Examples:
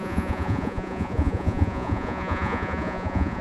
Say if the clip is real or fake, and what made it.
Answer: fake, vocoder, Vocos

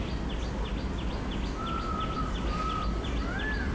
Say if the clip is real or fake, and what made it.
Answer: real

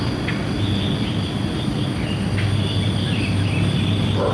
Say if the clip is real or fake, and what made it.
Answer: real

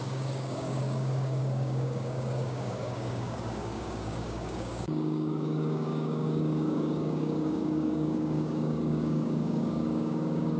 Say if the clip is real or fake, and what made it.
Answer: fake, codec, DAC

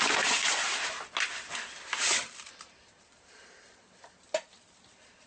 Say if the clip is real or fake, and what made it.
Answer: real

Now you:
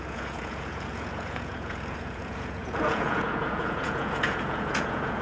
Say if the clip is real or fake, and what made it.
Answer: fake, vocoder, Vocos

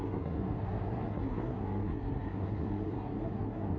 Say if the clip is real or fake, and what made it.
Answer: fake, codec, SNAC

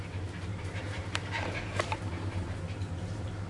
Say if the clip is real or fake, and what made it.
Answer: fake, vocoder, BigVGAN v2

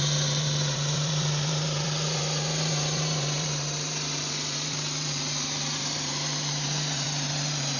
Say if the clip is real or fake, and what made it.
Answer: fake, vocoder, BigVGAN v2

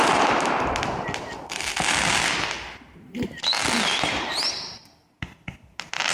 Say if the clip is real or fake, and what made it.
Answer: real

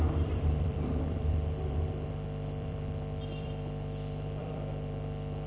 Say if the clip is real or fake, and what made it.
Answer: fake, vocoder, BigVGAN v2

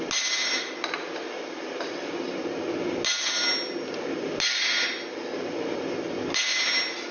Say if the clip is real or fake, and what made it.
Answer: real